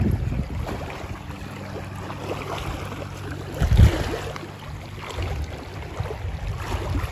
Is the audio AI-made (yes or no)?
no